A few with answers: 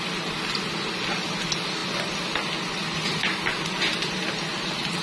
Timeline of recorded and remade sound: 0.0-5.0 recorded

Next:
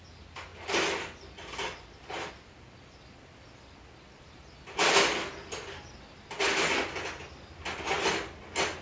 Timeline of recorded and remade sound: 0.0-8.8 recorded

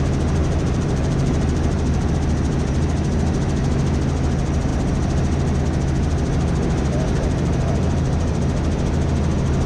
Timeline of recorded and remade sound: 0.0-0.4 recorded; 0.4-2.1 remade; 2.1-7.1 recorded; 7.1-8.4 remade; 8.4-9.7 recorded

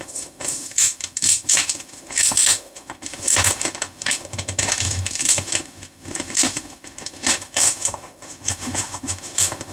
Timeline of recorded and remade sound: 0.0-9.7 remade

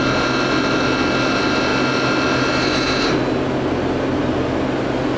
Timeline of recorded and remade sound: 0.0-5.2 recorded

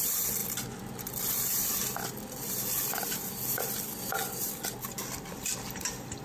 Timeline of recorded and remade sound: 0.0-0.4 remade; 0.4-1.2 recorded; 1.2-1.8 remade; 1.8-5.0 recorded; 5.0-6.2 remade

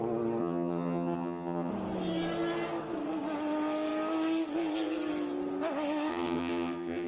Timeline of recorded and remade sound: 0.0-0.4 recorded; 0.4-1.7 remade; 1.7-6.1 recorded; 6.1-7.1 remade